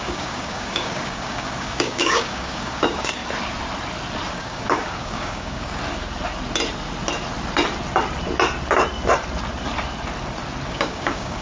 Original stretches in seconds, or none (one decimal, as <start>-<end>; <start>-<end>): 3.2-4.3; 5.8-10.7